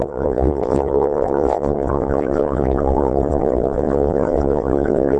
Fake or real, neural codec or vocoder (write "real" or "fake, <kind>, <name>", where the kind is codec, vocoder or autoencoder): fake, vocoder, WaveNeXt